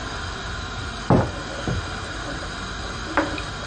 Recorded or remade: recorded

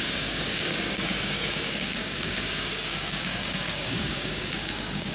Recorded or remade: remade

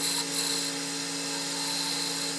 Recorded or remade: recorded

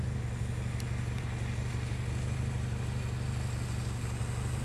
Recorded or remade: recorded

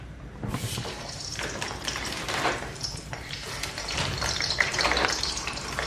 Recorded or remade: remade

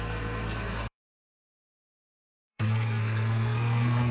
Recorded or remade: remade